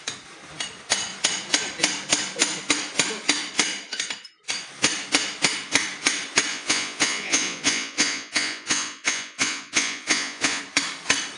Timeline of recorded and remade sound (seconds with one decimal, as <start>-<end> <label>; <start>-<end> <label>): 0.0-6.5 recorded; 6.5-10.6 remade; 10.6-11.4 recorded